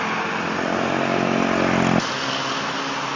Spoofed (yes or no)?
no